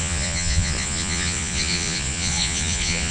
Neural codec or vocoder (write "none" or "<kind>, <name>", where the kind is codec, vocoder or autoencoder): vocoder, Vocos